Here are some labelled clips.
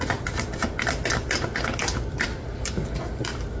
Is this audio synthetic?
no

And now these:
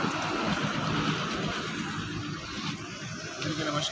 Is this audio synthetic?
no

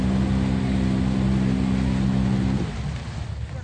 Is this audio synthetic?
no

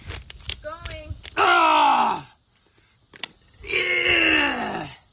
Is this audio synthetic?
no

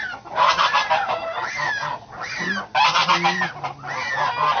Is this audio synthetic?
no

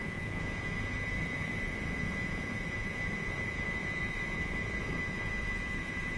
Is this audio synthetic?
yes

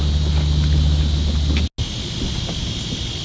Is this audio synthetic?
no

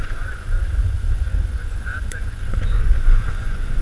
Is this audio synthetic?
yes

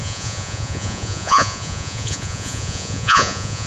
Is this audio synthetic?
yes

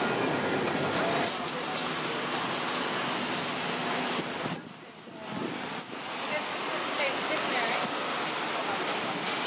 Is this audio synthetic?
no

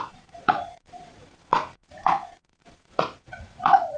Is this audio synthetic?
yes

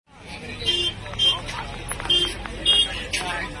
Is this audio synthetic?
no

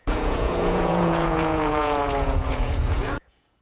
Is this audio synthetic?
yes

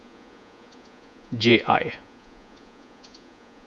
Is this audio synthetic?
yes